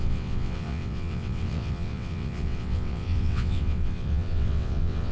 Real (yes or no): no